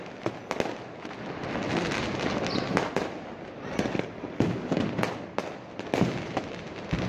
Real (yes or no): yes